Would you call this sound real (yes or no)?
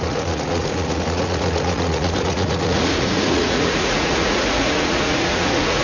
no